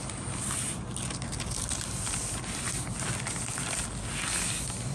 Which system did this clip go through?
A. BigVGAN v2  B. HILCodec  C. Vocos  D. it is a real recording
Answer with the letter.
D